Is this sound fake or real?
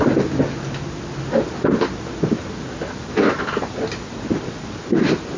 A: real